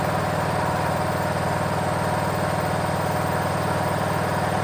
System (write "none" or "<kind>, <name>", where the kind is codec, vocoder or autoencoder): none